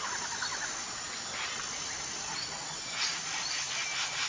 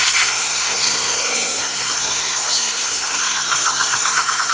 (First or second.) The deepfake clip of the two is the second